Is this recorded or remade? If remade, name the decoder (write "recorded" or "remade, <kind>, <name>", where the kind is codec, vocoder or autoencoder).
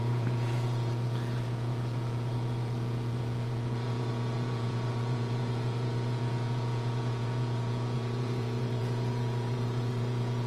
remade, vocoder, Vocos